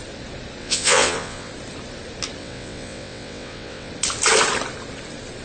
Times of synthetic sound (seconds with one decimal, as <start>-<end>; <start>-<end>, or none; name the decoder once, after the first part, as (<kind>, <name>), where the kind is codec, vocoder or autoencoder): 0.6-1.5 (vocoder, WaveNeXt); 2.4-3.9